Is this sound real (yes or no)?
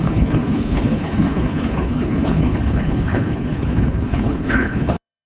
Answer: no